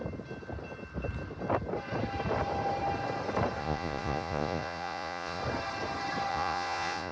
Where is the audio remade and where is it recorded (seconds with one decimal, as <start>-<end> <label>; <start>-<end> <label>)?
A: 0.0-3.6 recorded; 3.6-5.4 remade; 5.4-6.3 recorded; 6.3-7.1 remade